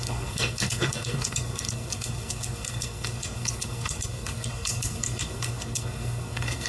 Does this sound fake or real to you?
fake